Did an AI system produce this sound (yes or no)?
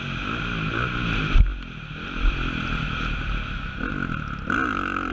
no